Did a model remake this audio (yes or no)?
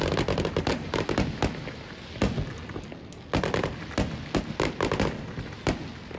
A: no